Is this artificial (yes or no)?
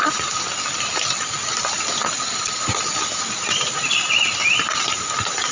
no